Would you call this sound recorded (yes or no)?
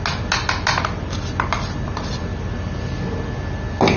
yes